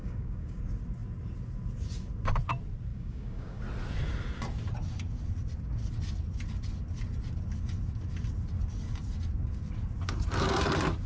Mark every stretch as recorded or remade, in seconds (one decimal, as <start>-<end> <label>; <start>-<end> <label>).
0.0-0.6 remade; 0.6-2.9 recorded; 2.9-3.6 remade; 3.6-11.1 recorded